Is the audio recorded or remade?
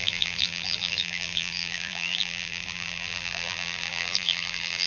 remade